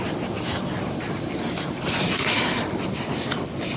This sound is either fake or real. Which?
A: real